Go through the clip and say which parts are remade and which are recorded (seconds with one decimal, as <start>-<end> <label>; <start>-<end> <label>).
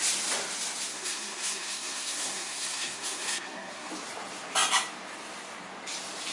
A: 0.0-0.9 recorded; 0.9-3.9 remade; 3.9-6.3 recorded